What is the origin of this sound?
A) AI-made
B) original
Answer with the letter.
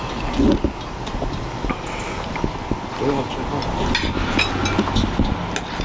B